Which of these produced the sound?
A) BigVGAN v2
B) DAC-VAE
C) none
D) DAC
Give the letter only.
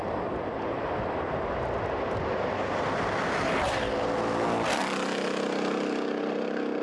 C